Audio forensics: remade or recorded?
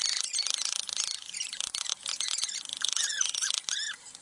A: recorded